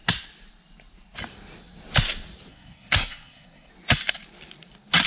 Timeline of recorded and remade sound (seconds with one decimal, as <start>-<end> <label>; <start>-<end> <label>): 0.0-2.5 recorded; 2.5-3.7 remade; 3.7-5.1 recorded